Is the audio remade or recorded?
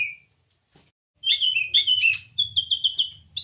recorded